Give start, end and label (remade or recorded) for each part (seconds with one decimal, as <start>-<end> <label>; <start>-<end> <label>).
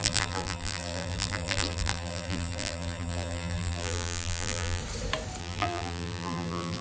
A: 0.0-4.8 remade; 4.8-5.4 recorded; 5.4-6.8 remade